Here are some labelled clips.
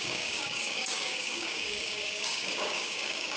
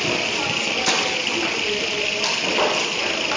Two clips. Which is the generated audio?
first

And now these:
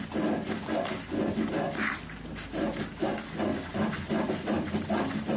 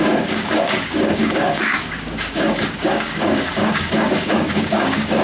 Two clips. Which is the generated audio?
second